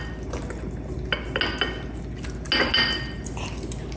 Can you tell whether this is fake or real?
real